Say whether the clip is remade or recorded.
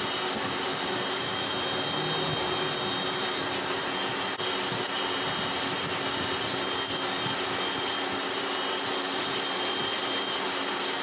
recorded